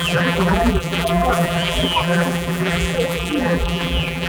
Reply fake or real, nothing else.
fake